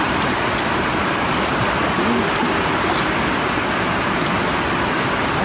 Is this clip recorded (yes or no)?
yes